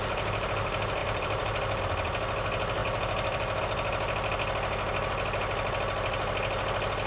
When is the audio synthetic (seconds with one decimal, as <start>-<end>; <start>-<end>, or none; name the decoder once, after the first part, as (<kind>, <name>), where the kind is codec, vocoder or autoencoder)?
1.0-1.8 (vocoder, BigVGAN v2); 2.8-3.6